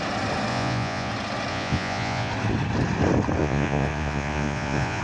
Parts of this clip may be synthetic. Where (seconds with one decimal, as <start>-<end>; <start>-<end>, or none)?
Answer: 0.5-1.1; 1.5-2.3; 3.4-5.0